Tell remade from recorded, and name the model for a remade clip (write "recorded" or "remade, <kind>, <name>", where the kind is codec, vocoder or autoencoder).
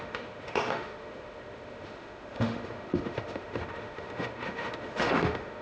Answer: remade, autoencoder, DAC-VAE